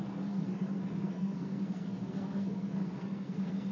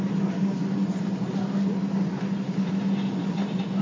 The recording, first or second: second